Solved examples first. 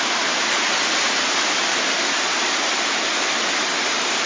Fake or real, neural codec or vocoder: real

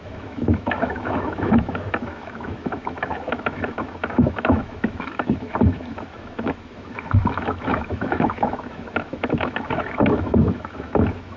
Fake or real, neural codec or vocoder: fake, autoencoder, DAC-VAE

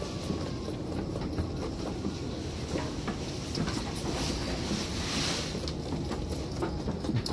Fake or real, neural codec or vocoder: real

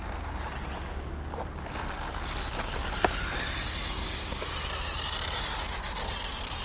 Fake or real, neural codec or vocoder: real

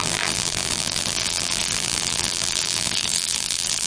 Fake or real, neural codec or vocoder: fake, vocoder, BigVGAN v2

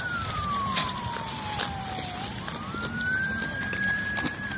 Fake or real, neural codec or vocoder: fake, vocoder, BigVGAN v2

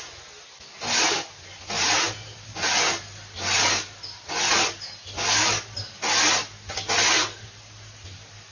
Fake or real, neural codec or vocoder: real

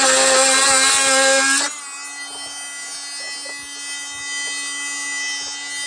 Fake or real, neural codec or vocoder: real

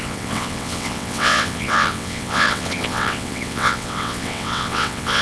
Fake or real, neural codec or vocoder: fake, vocoder, WaveNeXt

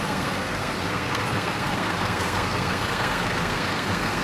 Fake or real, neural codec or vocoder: fake, codec, SNAC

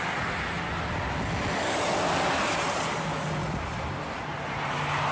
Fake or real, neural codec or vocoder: real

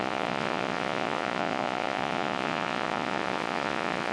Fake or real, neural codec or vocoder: fake, vocoder, Vocos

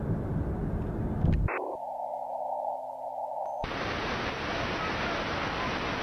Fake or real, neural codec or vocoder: real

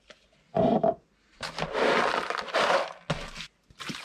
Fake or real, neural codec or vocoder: real